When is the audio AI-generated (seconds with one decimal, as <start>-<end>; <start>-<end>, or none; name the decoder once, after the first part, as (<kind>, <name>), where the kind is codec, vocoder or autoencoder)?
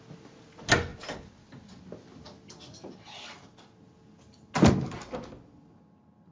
none